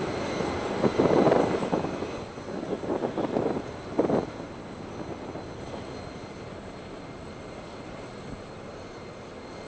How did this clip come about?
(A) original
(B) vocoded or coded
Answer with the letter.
A